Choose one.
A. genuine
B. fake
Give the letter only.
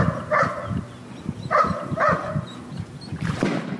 A